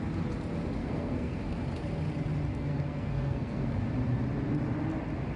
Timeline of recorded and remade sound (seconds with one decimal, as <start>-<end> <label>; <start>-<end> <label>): 0.0-0.8 recorded; 0.8-1.4 remade; 1.4-2.5 recorded; 2.5-3.8 remade; 3.8-5.4 recorded